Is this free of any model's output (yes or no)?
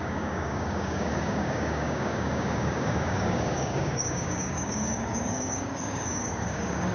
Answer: no